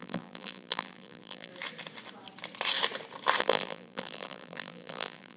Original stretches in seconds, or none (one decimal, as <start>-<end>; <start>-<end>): 1.5-3.4